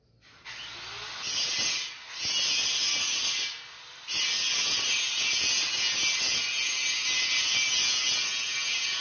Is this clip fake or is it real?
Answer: real